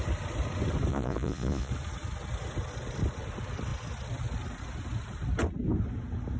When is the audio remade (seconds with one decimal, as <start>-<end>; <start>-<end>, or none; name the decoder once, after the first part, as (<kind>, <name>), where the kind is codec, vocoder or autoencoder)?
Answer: 0.9-1.7 (vocoder, Vocos)